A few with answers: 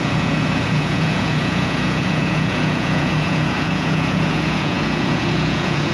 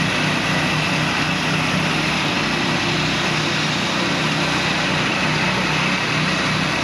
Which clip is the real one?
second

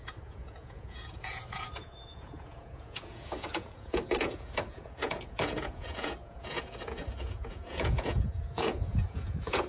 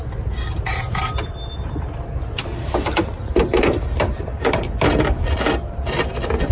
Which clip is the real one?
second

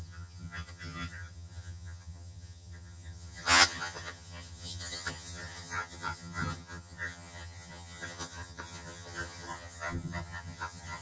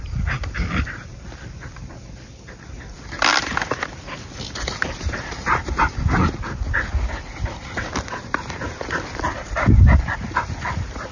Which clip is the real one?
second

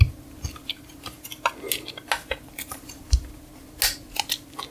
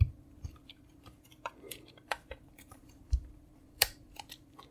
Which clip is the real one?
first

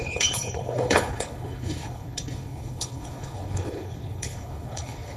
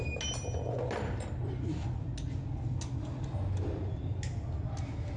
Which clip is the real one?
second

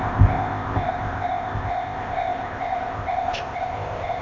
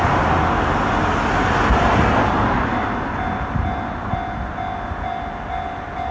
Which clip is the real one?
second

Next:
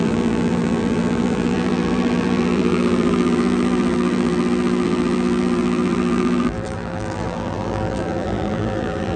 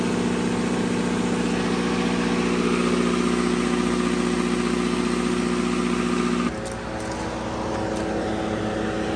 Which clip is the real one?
second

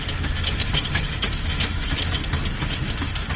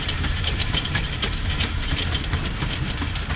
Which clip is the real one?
first